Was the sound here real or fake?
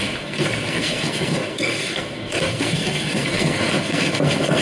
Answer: fake